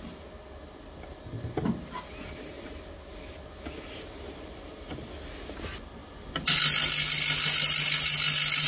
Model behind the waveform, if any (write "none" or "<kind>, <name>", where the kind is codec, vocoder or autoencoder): none